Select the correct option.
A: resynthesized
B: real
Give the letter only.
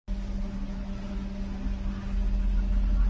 B